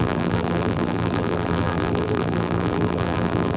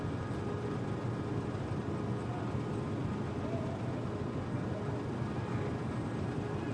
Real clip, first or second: second